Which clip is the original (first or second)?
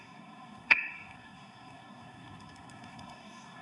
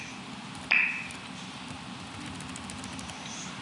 second